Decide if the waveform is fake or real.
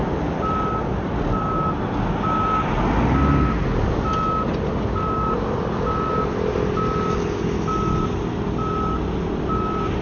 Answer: real